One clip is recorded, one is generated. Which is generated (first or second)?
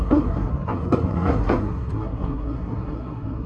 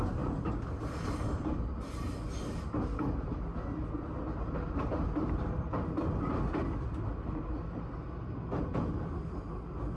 first